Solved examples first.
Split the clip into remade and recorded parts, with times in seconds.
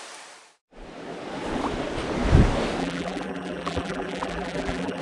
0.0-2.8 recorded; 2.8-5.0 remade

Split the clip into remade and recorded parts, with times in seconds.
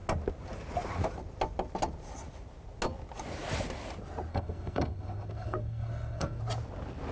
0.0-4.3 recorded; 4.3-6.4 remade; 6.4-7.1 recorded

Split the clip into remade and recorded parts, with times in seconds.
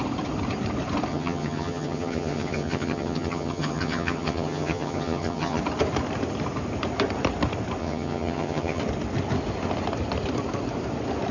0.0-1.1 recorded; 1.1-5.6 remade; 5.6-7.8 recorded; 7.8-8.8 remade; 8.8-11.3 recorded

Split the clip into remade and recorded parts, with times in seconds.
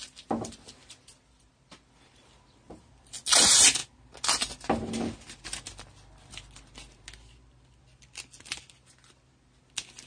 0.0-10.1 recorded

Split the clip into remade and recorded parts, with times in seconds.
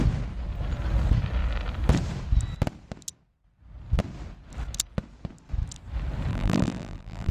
0.0-6.3 recorded; 6.3-7.3 remade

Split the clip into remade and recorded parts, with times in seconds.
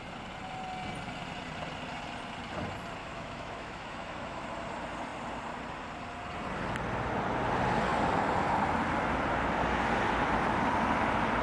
0.0-3.0 recorded; 3.0-4.5 remade; 4.5-11.4 recorded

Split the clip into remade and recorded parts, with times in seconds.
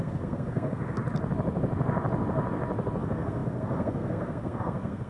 0.0-1.0 remade; 1.0-3.0 recorded; 3.0-5.1 remade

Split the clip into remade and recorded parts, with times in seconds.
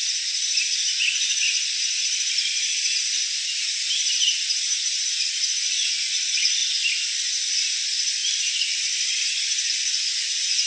0.0-1.4 recorded; 1.4-1.9 remade; 1.9-4.5 recorded; 4.5-6.6 remade; 6.6-7.5 recorded; 7.5-8.2 remade; 8.2-8.9 recorded; 8.9-10.7 remade